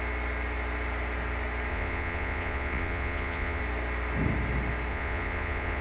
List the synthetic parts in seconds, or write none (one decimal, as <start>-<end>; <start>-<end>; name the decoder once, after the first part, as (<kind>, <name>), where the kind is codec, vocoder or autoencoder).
1.7-3.6 (vocoder, Vocos); 4.9-5.8